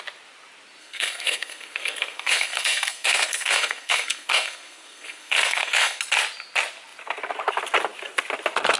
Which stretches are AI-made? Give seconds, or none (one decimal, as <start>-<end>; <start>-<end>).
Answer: 0.8-6.0